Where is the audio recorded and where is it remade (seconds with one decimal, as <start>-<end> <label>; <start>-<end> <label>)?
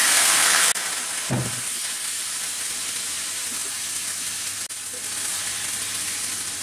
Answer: 0.0-0.7 remade; 0.7-6.6 recorded